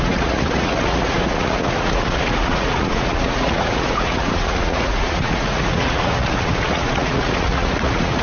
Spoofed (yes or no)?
yes